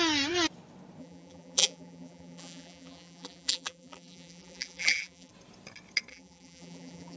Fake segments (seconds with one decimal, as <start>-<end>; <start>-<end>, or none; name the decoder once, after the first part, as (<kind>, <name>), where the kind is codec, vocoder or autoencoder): 1.0-5.3 (vocoder, BigVGAN v2); 6.1-7.2